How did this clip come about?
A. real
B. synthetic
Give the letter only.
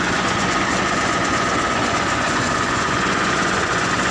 B